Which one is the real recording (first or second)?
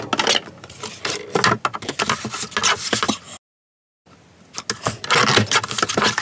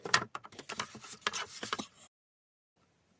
first